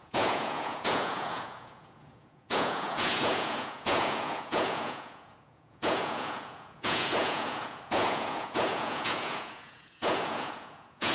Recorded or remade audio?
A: remade